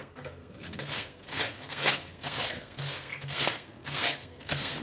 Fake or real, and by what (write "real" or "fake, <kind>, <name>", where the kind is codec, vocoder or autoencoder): fake, codec, SNAC